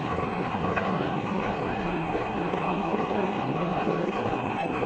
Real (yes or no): no